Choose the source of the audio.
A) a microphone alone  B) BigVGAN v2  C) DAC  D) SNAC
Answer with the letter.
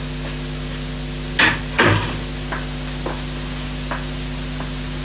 A